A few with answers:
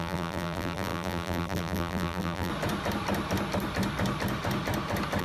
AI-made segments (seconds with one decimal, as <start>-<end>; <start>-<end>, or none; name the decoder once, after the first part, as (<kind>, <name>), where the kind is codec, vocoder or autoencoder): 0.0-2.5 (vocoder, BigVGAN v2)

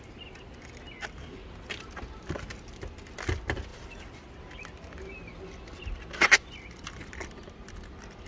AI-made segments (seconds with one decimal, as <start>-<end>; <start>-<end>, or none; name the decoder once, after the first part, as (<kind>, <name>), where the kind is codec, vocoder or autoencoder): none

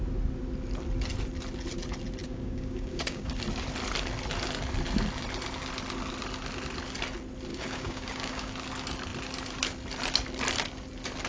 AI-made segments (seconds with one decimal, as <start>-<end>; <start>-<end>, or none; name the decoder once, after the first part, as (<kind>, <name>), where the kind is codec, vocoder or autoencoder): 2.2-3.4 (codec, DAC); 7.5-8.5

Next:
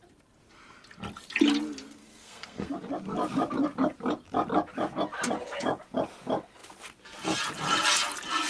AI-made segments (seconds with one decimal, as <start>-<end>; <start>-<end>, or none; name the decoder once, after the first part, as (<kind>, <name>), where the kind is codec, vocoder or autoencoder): 2.0-2.7 (codec, SNAC)